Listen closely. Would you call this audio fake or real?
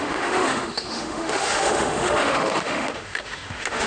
fake